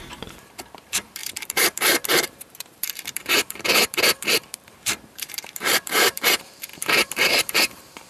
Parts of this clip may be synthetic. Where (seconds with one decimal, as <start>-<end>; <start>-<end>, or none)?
0.0-8.1